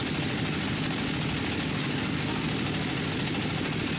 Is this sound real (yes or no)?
yes